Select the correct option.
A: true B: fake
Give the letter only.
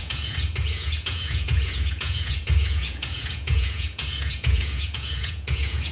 B